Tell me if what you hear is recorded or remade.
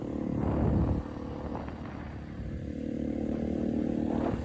recorded